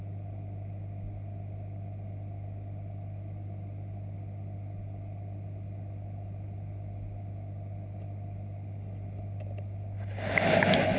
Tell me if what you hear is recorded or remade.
recorded